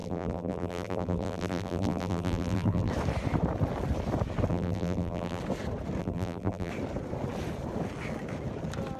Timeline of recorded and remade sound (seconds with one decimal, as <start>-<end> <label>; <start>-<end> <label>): 0.0-2.9 remade; 2.9-4.5 recorded; 4.5-5.4 remade; 5.4-6.0 recorded; 6.0-6.7 remade; 6.7-9.0 recorded